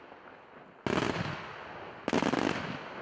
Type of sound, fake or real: real